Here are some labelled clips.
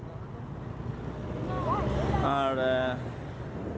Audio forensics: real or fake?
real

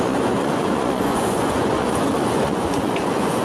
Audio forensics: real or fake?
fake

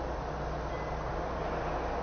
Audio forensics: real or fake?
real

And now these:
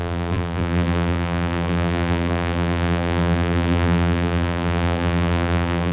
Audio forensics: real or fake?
fake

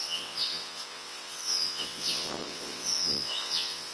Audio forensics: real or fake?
fake